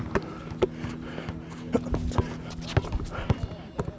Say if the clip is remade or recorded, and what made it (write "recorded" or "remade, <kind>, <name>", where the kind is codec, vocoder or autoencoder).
recorded